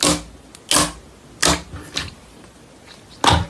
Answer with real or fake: real